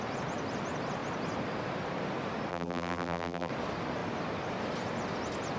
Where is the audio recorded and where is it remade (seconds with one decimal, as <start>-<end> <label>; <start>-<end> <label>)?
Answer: 0.0-2.5 recorded; 2.5-3.5 remade; 3.5-5.6 recorded